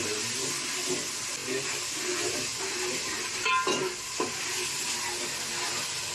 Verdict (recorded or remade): recorded